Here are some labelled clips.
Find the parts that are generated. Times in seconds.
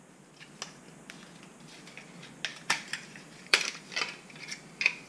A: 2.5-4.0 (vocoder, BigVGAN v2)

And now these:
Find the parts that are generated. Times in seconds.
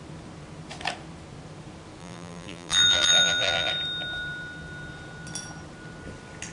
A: 2.0-3.7 (vocoder, BigVGAN v2)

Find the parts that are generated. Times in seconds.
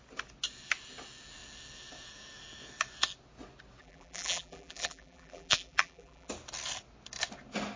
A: 3.8-6.3 (vocoder, BigVGAN v2)